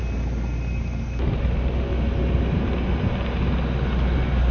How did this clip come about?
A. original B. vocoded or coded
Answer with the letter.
A